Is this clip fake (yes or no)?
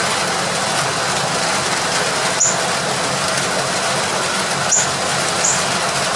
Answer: no